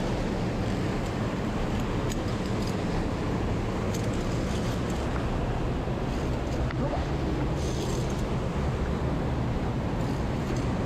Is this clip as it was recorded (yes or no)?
yes